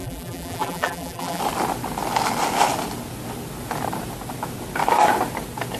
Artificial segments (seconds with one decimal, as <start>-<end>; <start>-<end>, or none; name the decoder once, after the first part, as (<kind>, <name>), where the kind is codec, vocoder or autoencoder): 0.0-1.4 (vocoder, BigVGAN v2)